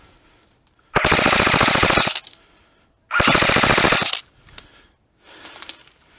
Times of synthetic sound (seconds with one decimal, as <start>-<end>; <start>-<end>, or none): none